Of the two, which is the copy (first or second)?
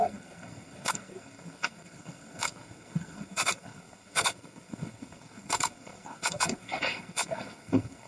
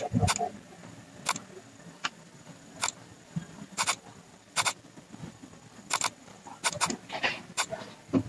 first